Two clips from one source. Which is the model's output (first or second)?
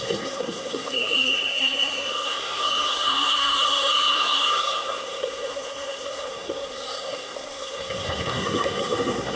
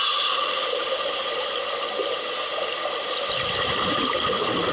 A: first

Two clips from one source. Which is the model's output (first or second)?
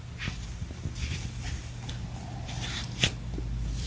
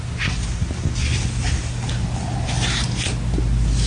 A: first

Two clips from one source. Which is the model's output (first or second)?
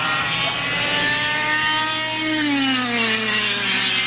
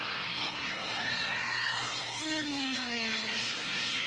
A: second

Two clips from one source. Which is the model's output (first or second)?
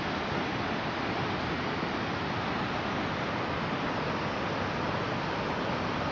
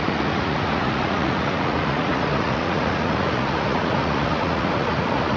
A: second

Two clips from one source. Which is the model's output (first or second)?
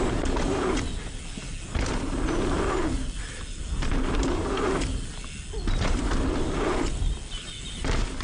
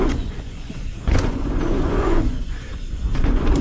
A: second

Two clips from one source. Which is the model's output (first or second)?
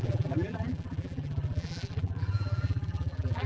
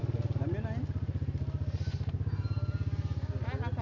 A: first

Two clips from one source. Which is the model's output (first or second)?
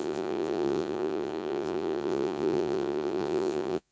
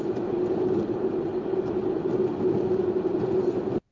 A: first